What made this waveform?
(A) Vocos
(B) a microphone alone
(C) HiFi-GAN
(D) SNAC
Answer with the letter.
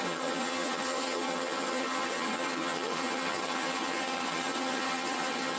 C